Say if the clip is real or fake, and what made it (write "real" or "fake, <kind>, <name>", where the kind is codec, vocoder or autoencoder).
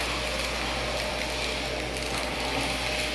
real